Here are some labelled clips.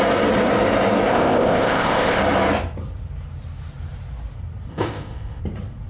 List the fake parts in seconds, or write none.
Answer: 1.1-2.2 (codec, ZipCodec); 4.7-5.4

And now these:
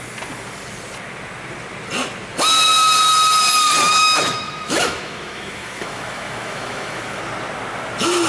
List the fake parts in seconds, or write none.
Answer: 4.0-7.2 (autoencoder, DAC-VAE)

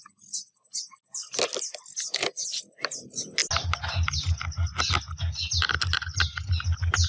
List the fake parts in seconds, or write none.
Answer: none

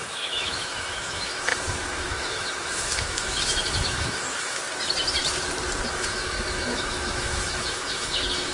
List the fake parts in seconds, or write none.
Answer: 0.0-4.6 (autoencoder, DAC-VAE); 5.9-8.5

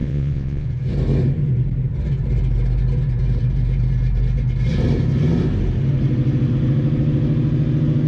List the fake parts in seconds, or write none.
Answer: 0.0-0.7 (vocoder, Vocos)

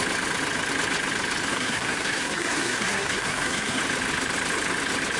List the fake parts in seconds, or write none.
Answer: 1.5-3.8 (codec, SNAC)

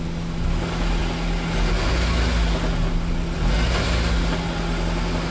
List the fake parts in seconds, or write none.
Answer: none

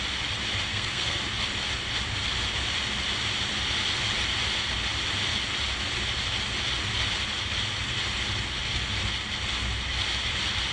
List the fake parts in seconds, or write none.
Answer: 0.7-1.2 (codec, SNAC)